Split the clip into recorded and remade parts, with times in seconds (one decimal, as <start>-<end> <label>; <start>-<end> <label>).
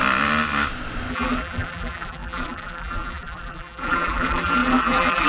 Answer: 0.0-1.1 recorded; 1.1-5.3 remade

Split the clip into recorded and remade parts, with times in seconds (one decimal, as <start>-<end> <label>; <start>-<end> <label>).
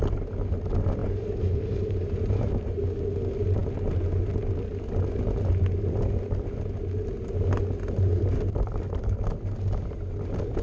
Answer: 0.0-1.0 recorded; 1.0-2.8 remade; 2.8-10.6 recorded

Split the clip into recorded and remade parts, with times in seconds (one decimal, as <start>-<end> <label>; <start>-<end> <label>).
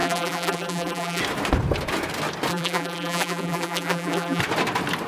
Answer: 0.0-1.2 remade; 1.2-2.5 recorded; 2.5-4.4 remade; 4.4-5.1 recorded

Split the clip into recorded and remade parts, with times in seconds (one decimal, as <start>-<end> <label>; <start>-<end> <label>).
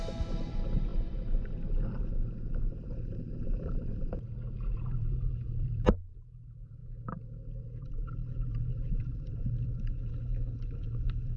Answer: 0.0-6.8 remade; 6.8-7.6 recorded; 7.6-11.4 remade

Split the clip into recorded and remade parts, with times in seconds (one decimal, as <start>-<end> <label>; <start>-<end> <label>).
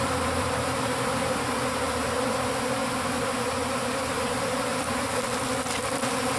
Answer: 0.0-6.4 remade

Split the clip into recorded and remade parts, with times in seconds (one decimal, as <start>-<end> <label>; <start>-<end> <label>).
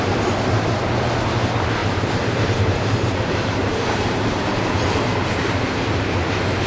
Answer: 0.0-1.8 recorded; 1.8-5.8 remade; 5.8-6.7 recorded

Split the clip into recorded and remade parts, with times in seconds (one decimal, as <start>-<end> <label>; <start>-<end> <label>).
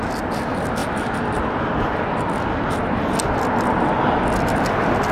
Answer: 0.0-5.1 recorded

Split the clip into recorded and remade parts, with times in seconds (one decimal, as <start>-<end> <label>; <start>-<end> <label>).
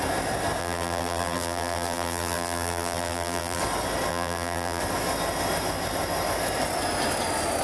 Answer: 0.0-0.6 recorded; 0.6-3.6 remade; 3.6-4.1 recorded; 4.1-4.8 remade; 4.8-7.6 recorded